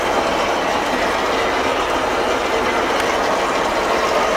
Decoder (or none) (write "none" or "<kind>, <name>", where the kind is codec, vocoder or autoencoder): none